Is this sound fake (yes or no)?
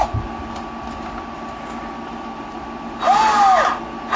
no